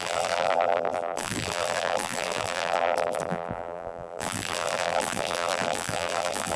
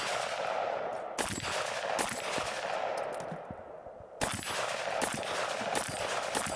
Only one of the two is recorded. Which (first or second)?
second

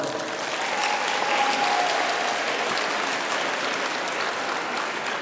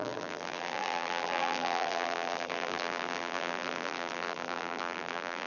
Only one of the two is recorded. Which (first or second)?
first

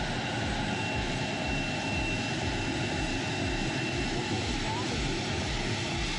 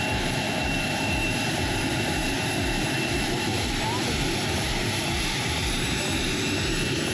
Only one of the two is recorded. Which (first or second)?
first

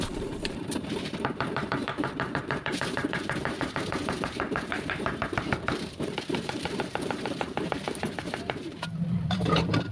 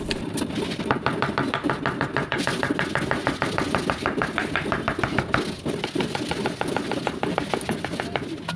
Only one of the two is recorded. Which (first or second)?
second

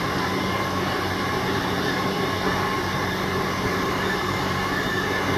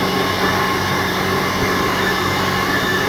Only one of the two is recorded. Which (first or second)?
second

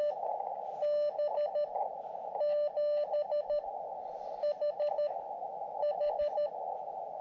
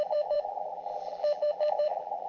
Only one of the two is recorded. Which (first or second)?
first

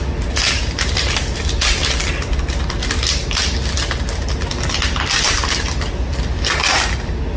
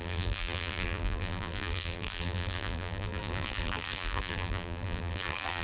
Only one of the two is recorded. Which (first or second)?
first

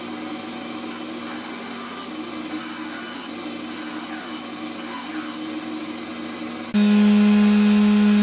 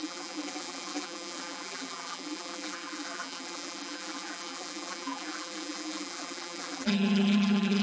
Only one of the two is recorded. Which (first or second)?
first